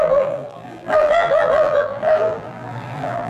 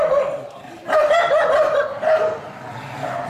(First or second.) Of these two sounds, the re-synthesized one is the first